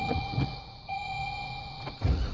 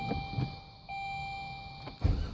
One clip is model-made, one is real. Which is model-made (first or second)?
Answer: first